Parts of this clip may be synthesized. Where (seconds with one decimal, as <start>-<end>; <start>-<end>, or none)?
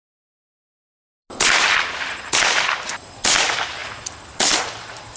none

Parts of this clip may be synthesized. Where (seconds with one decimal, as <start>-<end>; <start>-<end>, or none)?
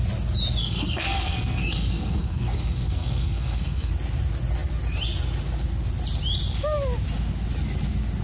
0.6-3.9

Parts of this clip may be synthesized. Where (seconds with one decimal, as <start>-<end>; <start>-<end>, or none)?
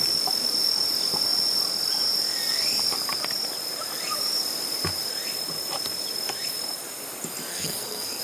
7.5-8.2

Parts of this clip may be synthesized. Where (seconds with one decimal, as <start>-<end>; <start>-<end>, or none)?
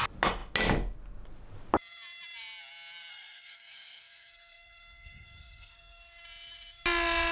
3.1-6.0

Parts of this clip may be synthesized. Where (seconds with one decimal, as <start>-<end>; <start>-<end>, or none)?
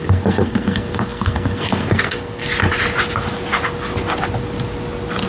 0.0-2.4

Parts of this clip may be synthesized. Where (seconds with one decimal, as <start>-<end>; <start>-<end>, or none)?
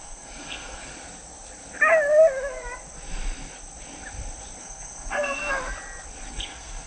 0.0-0.9; 4.6-5.4; 6.3-6.9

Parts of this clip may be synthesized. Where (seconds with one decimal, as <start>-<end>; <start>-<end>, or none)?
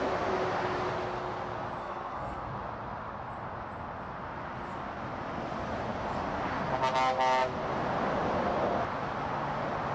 1.8-2.5